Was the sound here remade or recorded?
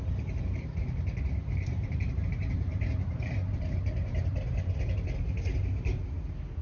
remade